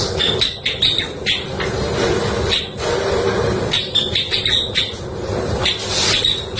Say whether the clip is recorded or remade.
recorded